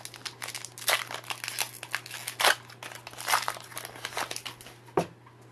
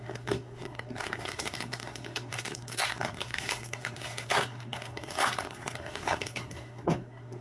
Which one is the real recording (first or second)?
first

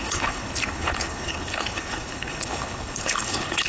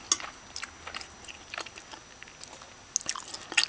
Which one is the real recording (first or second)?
second